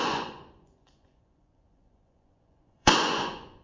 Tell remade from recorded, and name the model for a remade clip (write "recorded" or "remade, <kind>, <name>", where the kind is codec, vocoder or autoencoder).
remade, vocoder, Vocos